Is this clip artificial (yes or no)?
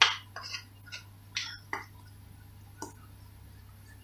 no